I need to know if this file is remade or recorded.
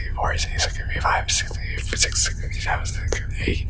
recorded